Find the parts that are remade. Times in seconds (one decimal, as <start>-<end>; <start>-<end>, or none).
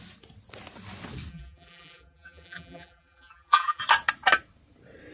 1.3-3.8